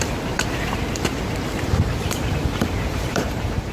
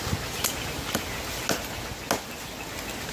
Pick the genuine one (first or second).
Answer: second